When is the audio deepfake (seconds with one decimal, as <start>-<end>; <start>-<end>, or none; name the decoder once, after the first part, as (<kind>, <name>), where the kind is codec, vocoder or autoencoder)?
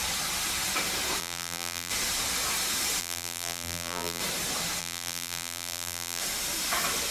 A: 1.2-1.9 (vocoder, BigVGAN v2); 3.0-4.2; 4.8-6.2